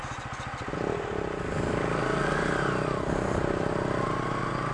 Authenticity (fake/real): real